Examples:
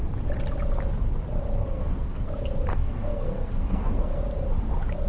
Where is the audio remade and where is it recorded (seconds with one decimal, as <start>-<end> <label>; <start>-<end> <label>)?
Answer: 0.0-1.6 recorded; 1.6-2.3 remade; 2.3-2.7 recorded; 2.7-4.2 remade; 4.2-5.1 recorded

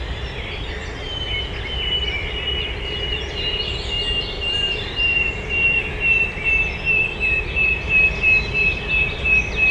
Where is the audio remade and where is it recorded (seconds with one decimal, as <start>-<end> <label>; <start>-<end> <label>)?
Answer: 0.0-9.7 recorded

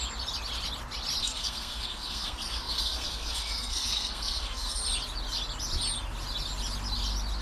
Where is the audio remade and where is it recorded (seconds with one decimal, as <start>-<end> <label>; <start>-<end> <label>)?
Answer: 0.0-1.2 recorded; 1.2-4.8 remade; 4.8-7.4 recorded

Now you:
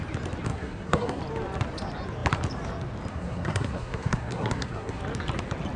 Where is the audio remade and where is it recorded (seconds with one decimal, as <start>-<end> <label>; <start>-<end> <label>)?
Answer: 0.0-0.5 recorded; 0.5-1.2 remade; 1.2-3.1 recorded; 3.1-5.0 remade; 5.0-5.8 recorded

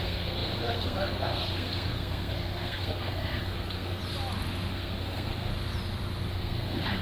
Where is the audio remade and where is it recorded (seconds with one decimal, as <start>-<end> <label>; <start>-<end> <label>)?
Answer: 0.0-4.0 remade; 4.0-4.7 recorded; 4.7-5.5 remade; 5.5-6.3 recorded; 6.3-7.0 remade

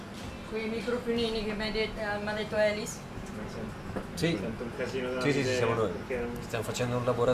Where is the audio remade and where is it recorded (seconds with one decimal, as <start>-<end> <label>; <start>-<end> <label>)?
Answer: 0.0-7.3 recorded

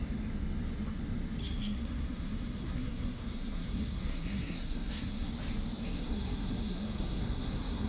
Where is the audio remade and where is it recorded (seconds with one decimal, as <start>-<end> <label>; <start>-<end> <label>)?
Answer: 0.0-1.4 recorded; 1.4-5.3 remade; 5.3-5.8 recorded; 5.8-7.9 remade